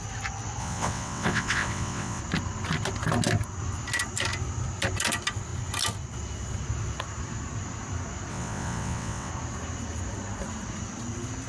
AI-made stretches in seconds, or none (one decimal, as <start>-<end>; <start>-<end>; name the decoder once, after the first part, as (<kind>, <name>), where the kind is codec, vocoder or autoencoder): 0.6-2.2 (vocoder, WaveNeXt); 8.3-9.3